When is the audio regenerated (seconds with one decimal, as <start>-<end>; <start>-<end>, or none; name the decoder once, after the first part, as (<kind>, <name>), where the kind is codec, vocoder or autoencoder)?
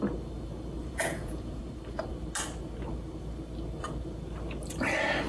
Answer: 0.8-1.6 (vocoder, Vocos)